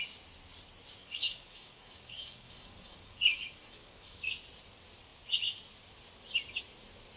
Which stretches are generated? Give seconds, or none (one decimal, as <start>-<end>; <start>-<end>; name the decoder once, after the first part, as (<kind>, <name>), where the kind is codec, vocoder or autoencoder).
1.0-4.3 (codec, DAC)